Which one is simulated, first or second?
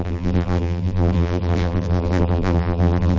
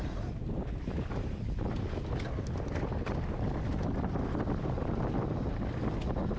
first